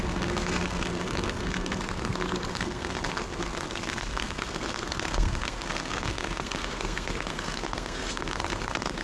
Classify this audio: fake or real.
fake